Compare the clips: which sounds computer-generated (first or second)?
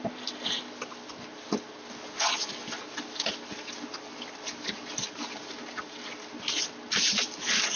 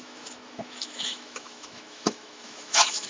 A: second